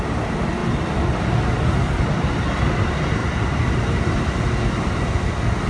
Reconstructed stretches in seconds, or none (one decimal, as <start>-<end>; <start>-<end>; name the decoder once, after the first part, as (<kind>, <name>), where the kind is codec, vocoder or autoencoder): 3.2-3.8 (vocoder, BigVGAN v2)